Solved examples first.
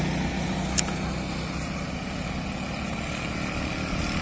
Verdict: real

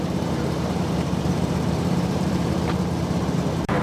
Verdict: fake